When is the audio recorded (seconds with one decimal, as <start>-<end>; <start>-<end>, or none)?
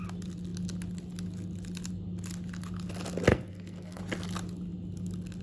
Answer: 0.0-3.3; 4.0-5.4